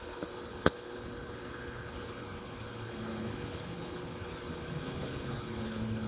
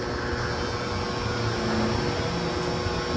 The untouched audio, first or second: second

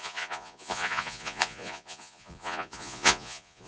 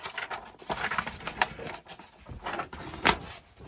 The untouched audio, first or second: second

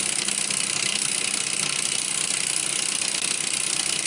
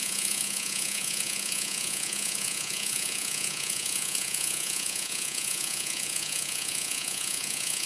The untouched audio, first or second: first